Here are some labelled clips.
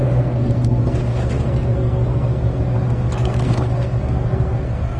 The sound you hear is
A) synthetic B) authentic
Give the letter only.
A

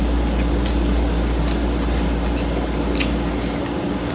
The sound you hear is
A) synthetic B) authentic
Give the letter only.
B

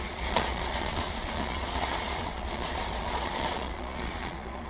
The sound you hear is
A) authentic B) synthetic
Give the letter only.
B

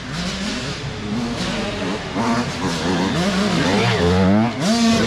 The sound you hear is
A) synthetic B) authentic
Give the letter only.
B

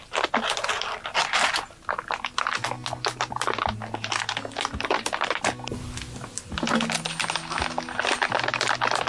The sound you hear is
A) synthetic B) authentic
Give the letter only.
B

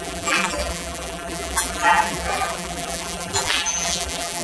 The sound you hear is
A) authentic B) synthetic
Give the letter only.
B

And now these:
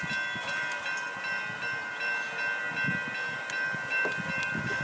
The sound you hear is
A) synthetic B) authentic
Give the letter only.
B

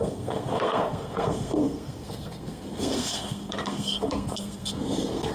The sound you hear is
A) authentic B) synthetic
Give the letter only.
B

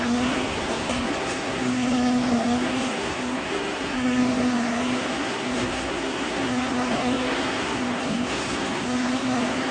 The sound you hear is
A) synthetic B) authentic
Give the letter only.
A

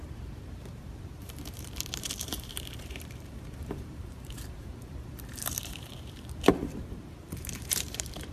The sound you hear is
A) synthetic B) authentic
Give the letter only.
A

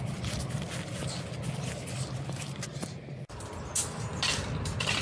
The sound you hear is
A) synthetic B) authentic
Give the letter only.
B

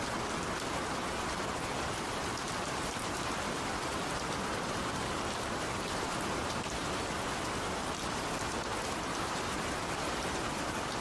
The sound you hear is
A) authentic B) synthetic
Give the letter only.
A